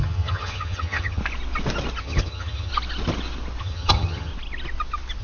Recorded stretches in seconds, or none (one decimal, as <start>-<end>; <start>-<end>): 1.2-2.0; 2.7-3.6; 4.3-5.2